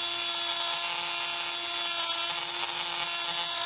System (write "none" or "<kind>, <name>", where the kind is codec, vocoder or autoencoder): none